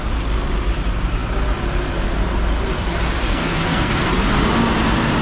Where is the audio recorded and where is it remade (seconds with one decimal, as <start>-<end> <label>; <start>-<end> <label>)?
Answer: 0.0-3.3 recorded; 3.3-4.1 remade; 4.1-5.2 recorded